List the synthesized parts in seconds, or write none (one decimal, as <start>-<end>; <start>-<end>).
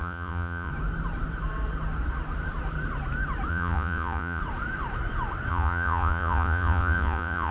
0.0-0.7; 3.5-4.4; 5.5-7.5